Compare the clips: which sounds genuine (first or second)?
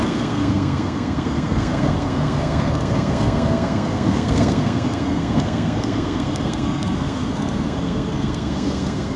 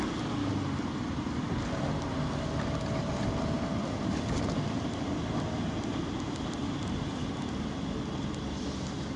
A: second